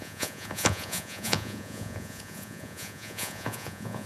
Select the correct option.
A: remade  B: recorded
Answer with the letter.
A